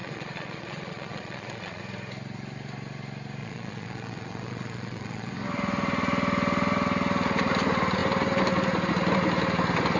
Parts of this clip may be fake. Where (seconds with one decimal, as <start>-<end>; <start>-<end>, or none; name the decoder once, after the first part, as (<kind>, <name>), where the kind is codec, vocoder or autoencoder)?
0.0-1.8 (vocoder, Vocos); 3.4-5.3